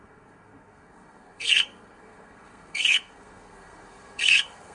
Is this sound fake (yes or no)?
yes